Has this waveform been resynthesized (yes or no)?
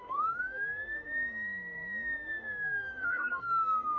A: yes